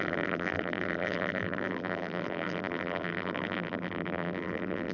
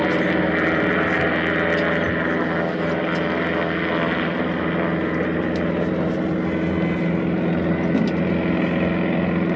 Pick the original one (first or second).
second